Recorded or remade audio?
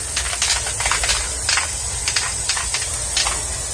recorded